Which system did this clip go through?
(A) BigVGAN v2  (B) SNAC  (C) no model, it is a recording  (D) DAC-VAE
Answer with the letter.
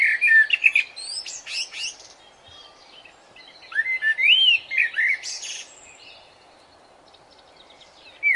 C